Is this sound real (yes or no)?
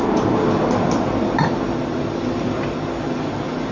yes